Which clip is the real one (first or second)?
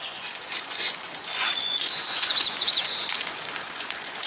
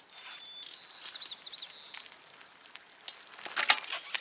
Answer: second